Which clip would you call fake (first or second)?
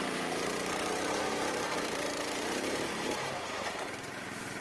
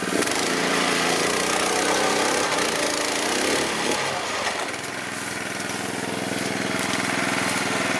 first